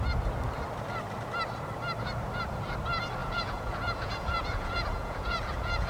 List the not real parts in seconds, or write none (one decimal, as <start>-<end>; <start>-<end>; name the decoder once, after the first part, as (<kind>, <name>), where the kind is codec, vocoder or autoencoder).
3.2-5.9 (vocoder, Vocos)